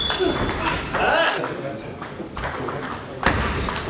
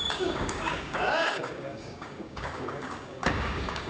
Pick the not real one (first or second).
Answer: second